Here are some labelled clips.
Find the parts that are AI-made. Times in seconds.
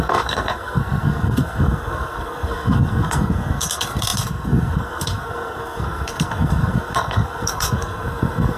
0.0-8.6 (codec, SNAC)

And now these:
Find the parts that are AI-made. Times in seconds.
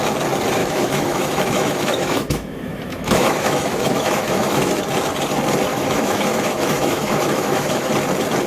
0.6-4.8 (autoencoder, DAC-VAE); 5.7-7.9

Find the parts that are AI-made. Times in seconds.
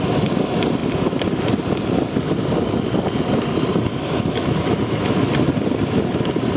3.9-5.3 (autoencoder, DAC-VAE)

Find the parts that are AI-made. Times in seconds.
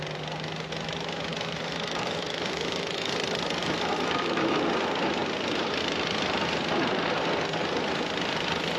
1.3-3.1 (autoencoder, DAC-VAE); 3.6-4.6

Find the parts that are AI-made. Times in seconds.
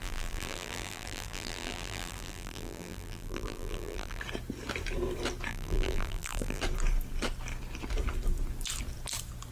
0.0-4.2 (vocoder, BigVGAN v2); 5.5-6.6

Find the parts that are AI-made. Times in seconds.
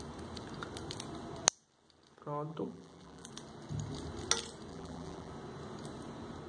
2.5-3.3 (vocoder, BigVGAN v2); 4.7-5.3